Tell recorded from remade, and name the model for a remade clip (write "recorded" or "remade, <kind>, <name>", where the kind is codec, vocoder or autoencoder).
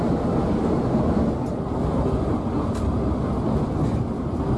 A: recorded